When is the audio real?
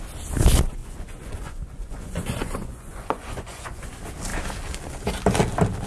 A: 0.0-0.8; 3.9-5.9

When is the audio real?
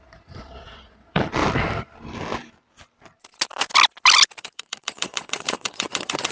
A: 1.4-4.4